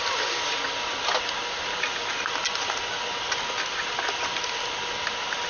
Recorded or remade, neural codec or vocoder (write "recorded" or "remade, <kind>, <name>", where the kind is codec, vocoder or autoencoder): recorded